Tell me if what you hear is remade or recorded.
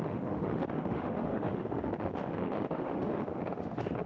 remade